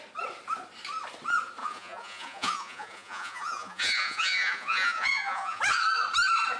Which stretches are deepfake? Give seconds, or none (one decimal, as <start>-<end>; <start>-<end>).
1.6-5.6